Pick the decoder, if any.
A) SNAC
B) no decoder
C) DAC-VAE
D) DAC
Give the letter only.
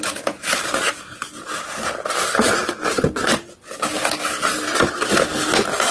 B